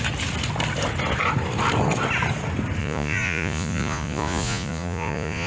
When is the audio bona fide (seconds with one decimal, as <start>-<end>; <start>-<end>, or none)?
0.0-2.8